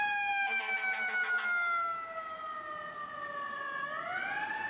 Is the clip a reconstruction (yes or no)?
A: no